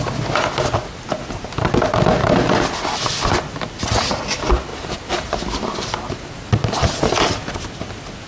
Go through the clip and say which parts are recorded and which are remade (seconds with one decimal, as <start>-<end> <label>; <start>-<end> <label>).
0.0-8.3 recorded